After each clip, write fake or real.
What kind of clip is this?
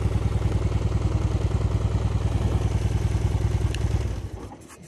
real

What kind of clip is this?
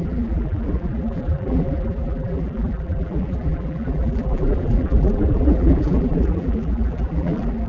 fake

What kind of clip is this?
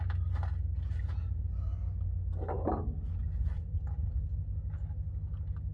real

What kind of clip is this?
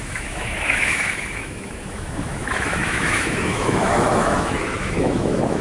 fake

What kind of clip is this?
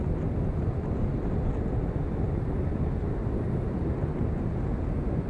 real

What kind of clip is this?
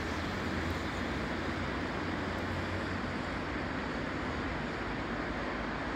real